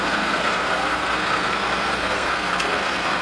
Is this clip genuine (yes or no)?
no